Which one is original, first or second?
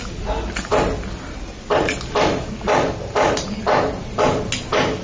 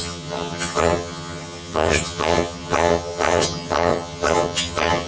first